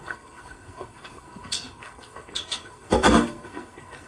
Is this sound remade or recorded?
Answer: remade